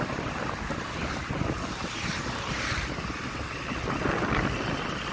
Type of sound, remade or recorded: recorded